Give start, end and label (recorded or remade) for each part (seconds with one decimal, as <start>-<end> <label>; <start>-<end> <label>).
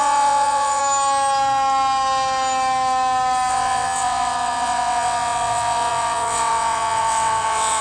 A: 0.0-0.8 remade; 0.8-3.5 recorded; 3.5-7.8 remade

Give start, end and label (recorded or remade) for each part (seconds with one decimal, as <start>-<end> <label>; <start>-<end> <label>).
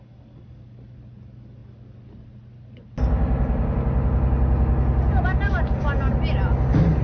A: 0.0-7.0 recorded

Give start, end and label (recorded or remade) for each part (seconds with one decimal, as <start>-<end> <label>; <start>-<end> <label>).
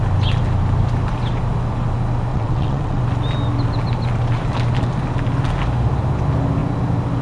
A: 0.0-2.3 recorded; 2.3-3.0 remade; 3.0-7.2 recorded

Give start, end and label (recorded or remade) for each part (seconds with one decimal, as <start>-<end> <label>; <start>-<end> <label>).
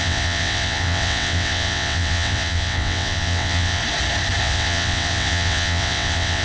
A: 0.0-3.8 remade; 3.8-4.4 recorded; 4.4-6.4 remade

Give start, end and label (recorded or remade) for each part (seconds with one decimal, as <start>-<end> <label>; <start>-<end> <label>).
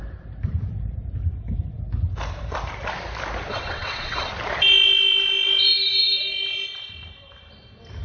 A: 0.0-3.5 recorded; 3.5-4.3 remade; 4.3-8.0 recorded